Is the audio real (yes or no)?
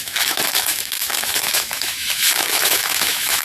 no